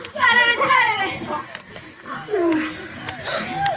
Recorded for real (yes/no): yes